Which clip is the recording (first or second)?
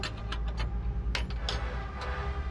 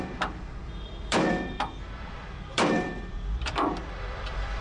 first